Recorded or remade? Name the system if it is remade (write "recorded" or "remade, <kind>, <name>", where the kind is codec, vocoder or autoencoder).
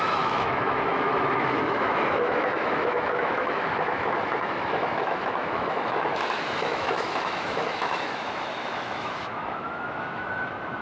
remade, autoencoder, DAC-VAE